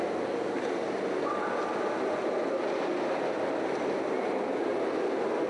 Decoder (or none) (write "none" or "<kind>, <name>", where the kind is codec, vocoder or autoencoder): none